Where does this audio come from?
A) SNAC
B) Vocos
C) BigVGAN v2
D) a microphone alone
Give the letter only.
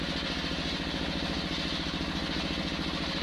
D